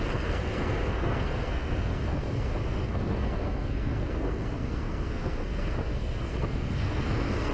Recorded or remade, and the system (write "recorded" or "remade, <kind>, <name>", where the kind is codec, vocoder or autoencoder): remade, codec, SNAC